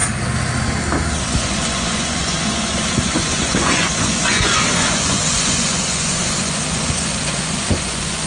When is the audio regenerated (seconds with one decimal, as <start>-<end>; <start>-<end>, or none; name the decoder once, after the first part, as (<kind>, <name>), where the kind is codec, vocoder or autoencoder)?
1.2-8.3 (vocoder, Vocos)